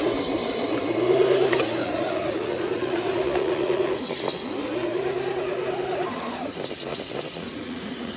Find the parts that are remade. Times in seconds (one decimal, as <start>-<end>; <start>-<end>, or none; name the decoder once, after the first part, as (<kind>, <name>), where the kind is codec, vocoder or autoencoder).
1.8-4.2 (vocoder, Vocos); 6.9-8.2